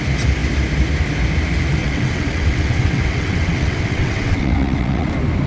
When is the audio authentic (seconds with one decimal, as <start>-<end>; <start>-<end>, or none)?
0.0-1.8; 5.1-5.5